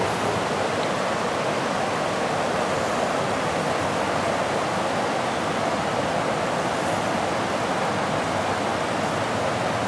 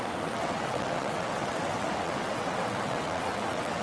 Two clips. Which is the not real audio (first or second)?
second